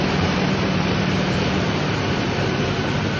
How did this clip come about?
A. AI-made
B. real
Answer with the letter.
A